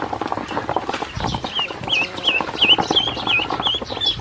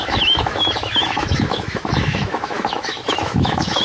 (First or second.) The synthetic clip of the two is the second